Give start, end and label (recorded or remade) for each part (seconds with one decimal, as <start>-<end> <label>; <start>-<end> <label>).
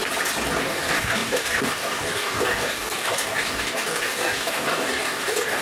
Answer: 0.0-0.6 recorded; 0.6-5.6 remade